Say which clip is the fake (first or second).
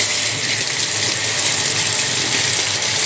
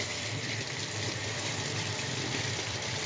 second